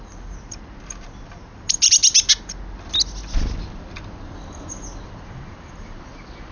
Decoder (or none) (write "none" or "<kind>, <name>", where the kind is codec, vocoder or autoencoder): none